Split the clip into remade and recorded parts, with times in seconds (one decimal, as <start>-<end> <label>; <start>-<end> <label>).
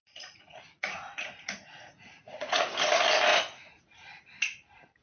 0.0-2.9 remade; 2.9-3.3 recorded; 3.3-3.8 remade; 3.8-5.0 recorded